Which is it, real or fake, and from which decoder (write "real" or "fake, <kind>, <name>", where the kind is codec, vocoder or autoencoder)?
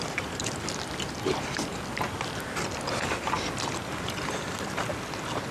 real